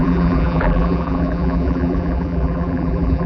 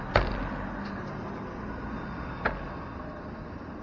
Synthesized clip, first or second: first